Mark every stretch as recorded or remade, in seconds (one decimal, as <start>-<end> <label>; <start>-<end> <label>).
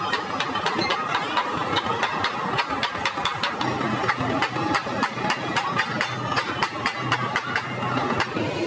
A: 0.0-8.7 recorded